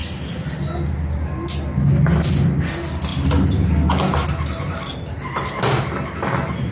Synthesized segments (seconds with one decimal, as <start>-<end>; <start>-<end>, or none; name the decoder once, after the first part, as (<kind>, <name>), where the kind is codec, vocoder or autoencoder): none